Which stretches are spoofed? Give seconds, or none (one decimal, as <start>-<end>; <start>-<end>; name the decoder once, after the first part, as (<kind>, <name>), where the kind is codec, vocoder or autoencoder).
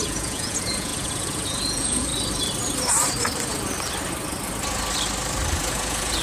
0.0-2.1 (vocoder, Vocos); 5.5-6.2